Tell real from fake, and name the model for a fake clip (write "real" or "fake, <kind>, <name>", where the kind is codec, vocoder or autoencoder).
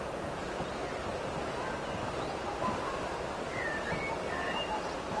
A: real